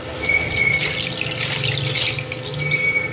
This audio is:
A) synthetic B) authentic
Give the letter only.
B